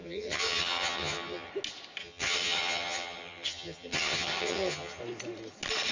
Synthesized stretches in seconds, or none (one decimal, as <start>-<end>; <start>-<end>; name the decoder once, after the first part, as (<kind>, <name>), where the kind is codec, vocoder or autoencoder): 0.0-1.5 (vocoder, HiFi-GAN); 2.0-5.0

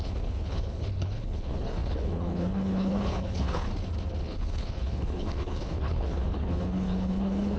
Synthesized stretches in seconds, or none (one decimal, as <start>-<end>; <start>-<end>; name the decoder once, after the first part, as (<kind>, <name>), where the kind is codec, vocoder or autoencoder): 0.0-3.7 (codec, HILCodec); 4.2-7.6

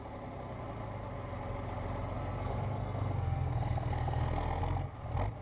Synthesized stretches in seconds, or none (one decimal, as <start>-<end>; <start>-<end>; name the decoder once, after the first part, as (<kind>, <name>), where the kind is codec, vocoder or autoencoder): 2.2-4.6 (codec, SNAC)

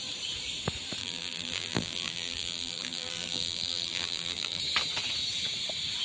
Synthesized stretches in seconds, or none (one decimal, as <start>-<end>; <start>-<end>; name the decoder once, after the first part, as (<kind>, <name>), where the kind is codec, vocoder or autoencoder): 1.0-4.6 (vocoder, BigVGAN v2)

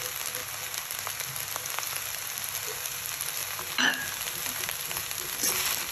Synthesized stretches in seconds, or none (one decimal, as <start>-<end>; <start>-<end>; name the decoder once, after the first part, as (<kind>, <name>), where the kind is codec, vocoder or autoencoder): none